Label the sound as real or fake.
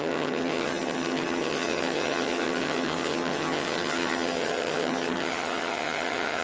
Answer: fake